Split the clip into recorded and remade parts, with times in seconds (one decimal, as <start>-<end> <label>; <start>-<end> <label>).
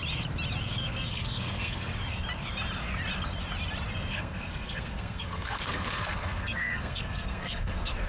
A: 0.0-0.8 recorded; 0.8-1.9 remade; 1.9-3.9 recorded; 3.9-8.1 remade